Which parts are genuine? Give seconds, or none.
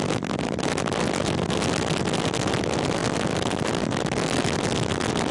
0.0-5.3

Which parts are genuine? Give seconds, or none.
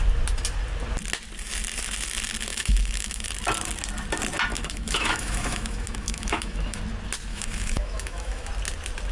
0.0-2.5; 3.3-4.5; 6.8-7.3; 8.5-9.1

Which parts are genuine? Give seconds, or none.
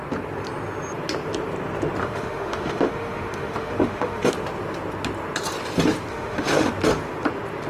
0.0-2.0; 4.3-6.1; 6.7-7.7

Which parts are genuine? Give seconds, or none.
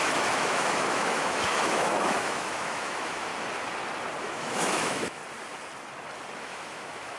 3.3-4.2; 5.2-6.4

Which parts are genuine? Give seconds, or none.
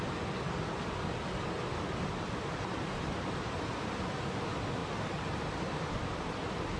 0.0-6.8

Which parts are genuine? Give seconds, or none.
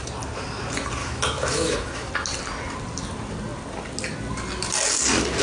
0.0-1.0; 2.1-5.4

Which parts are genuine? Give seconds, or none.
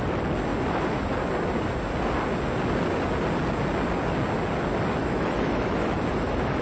0.0-5.0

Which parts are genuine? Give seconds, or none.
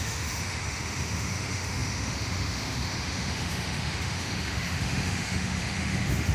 none